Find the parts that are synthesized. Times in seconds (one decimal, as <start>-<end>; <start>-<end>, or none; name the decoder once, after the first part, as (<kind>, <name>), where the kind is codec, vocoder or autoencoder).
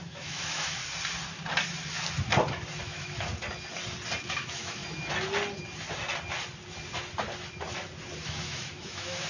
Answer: 0.0-0.8 (autoencoder, DAC-VAE); 2.8-3.3; 4.2-4.8; 8.2-9.3